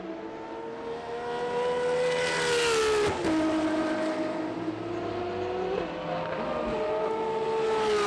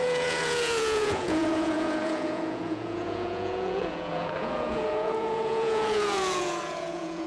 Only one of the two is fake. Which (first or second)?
second